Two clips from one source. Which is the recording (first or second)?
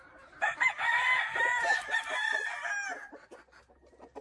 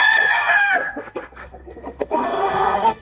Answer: first